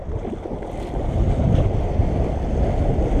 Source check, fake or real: real